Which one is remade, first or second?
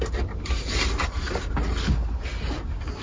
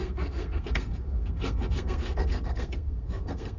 second